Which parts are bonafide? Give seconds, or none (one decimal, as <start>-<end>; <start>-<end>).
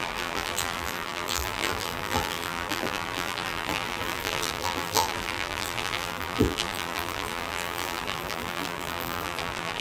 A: none